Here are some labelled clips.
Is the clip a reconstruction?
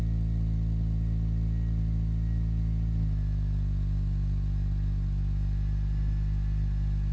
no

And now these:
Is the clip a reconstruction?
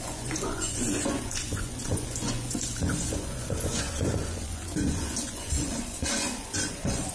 yes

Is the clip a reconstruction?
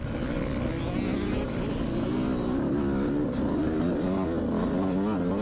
no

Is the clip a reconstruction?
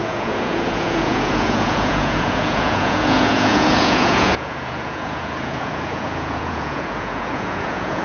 yes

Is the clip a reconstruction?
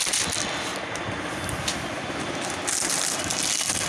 no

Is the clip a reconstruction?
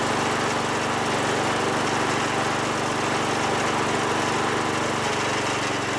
no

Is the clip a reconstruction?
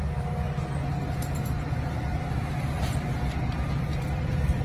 no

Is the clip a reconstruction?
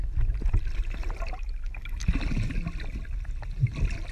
no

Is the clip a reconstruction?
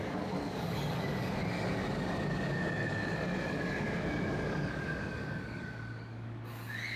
yes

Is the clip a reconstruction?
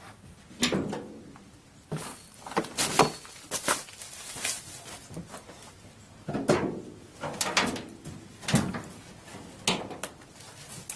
no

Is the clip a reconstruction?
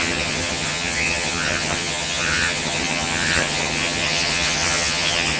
yes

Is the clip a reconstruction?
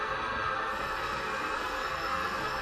yes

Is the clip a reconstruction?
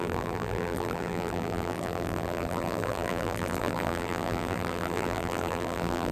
yes